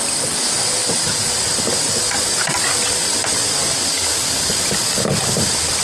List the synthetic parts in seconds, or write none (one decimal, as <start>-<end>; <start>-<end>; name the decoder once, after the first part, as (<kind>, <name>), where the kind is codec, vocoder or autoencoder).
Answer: 0.8-1.6 (vocoder, BigVGAN v2); 3.2-4.5